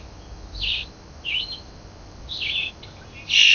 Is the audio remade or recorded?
recorded